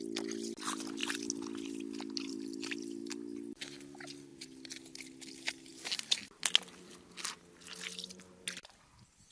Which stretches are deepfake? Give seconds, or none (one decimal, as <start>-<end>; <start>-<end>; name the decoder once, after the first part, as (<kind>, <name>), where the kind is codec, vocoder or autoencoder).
none